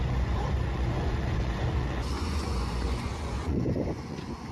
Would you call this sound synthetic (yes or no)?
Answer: yes